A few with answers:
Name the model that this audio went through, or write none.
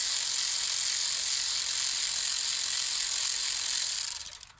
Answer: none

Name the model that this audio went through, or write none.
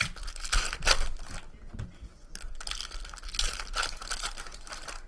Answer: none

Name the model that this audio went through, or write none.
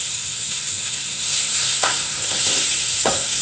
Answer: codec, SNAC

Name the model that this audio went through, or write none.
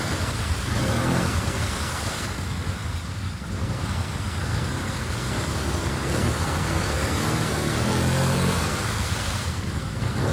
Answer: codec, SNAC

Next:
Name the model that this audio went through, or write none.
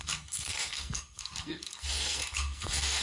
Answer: codec, SNAC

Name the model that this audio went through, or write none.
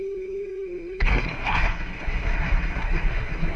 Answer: codec, SNAC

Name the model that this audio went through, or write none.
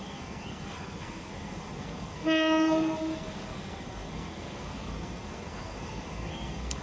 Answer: codec, SNAC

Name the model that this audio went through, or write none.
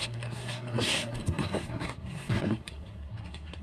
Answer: codec, SNAC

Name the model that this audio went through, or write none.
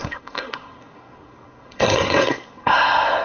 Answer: codec, SNAC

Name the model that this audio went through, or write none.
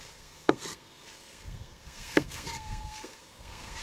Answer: codec, SNAC